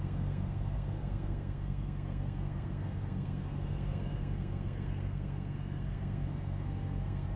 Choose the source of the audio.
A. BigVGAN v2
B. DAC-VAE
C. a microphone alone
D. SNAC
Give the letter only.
D